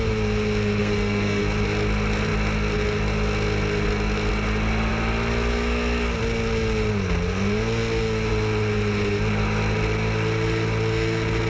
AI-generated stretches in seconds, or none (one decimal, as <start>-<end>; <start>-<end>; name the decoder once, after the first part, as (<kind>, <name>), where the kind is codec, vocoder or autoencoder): 0.8-1.4 (codec, SNAC)